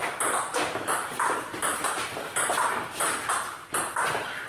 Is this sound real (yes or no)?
no